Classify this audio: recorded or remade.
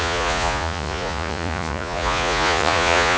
remade